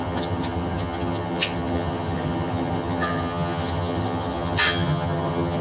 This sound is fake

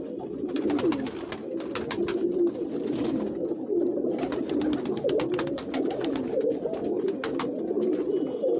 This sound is real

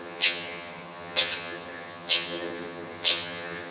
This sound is fake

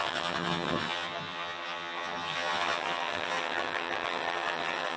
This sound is fake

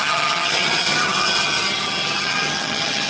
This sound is fake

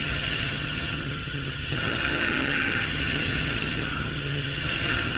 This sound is fake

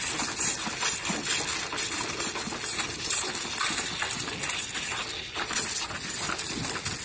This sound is real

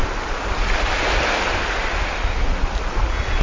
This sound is real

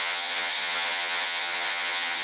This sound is fake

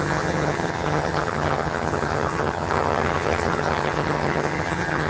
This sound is fake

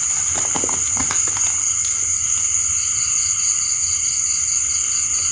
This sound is real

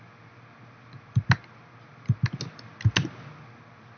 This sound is real